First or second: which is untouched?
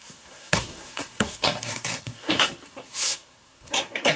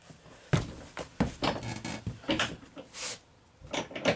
second